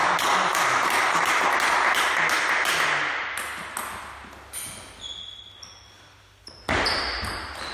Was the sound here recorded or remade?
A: recorded